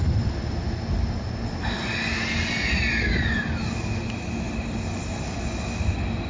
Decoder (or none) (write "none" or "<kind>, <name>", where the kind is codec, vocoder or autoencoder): none